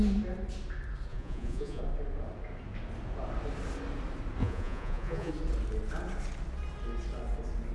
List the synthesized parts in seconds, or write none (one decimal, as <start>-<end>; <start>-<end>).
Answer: 1.1-1.8; 4.4-5.3